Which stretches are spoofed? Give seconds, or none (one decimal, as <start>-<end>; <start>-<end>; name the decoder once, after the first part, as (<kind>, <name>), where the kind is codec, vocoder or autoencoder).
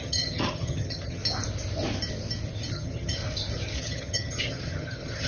0.0-1.2 (vocoder, HiFi-GAN); 2.7-3.2; 3.8-5.3